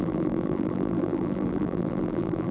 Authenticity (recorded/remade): remade